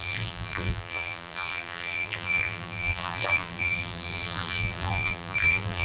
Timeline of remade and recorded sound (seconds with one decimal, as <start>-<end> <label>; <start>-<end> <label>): 0.0-5.8 remade